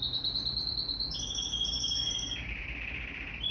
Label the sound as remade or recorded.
remade